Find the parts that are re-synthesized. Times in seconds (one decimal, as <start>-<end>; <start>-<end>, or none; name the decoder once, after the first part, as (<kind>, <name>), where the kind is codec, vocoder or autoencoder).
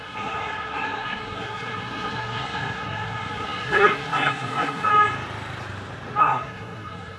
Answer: 0.0-4.9 (codec, SNAC); 6.2-7.2